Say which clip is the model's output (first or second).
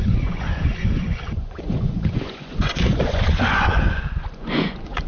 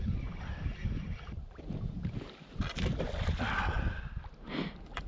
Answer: first